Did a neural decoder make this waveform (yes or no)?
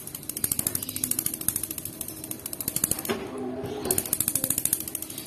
no